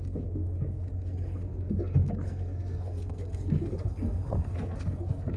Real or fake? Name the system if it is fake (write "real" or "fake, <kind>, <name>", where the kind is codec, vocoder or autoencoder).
fake, codec, SNAC